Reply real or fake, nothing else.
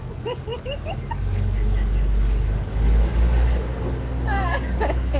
fake